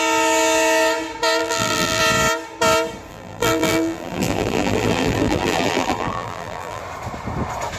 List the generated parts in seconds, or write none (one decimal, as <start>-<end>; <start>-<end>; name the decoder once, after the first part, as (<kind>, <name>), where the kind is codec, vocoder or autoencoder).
1.4-2.0 (vocoder, BigVGAN v2); 3.1-6.8